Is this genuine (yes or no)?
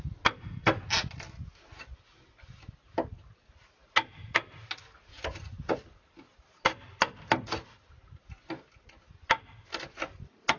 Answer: yes